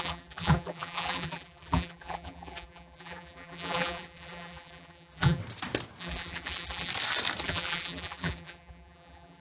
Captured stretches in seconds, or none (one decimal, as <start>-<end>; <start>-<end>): 5.4-6.0; 6.9-7.4